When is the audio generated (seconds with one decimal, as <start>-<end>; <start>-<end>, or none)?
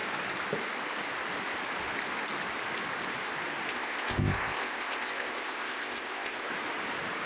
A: 3.7-6.5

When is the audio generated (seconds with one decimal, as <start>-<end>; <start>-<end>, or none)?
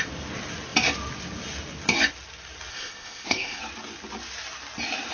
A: 2.7-3.6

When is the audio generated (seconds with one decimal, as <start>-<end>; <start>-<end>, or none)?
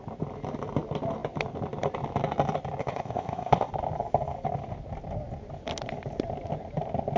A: 2.8-3.7